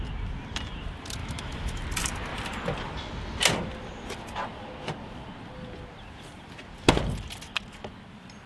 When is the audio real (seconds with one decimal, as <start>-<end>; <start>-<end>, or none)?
0.0-1.2; 1.8-8.5

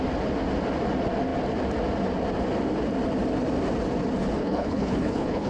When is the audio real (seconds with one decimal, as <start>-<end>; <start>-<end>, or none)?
0.0-4.4

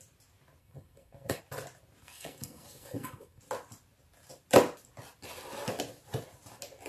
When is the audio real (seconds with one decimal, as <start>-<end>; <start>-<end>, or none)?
0.0-0.6; 1.4-2.0; 3.4-6.9

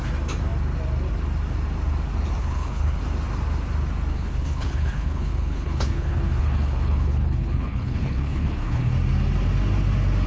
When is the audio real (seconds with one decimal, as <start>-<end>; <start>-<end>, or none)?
0.0-2.4; 3.0-4.1; 8.9-10.3

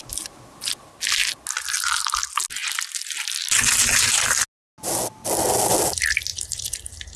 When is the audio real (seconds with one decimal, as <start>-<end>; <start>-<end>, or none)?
0.0-6.3